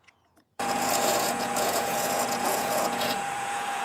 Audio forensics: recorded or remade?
remade